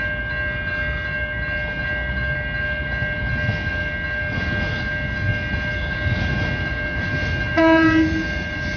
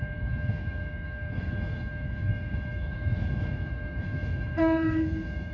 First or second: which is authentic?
first